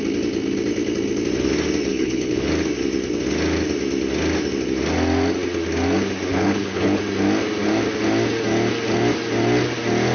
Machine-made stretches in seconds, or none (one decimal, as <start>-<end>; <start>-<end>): 1.9-2.5; 6.3-7.0